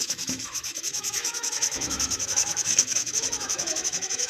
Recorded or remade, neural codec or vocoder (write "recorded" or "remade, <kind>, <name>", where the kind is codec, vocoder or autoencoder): remade, autoencoder, DAC-VAE